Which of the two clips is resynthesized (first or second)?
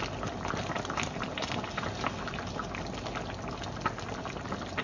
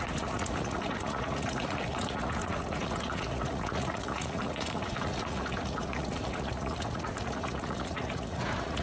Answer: second